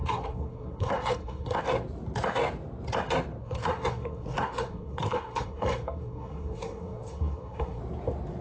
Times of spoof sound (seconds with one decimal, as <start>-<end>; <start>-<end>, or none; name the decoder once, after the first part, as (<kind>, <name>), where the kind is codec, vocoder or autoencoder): 0.0-1.6 (codec, SNAC); 3.4-7.8